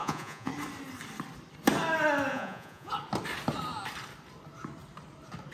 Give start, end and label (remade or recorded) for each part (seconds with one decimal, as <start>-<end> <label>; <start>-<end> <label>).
0.0-0.5 remade; 0.5-2.3 recorded; 2.3-2.9 remade; 2.9-5.5 recorded